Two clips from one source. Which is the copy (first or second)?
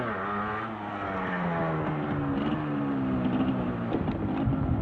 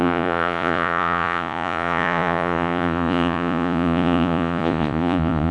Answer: second